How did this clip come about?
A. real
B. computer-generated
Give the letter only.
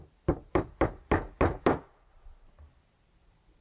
A